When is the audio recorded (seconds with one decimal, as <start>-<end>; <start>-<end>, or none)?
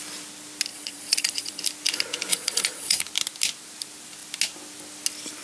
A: 0.0-0.7; 1.6-2.3; 3.0-5.4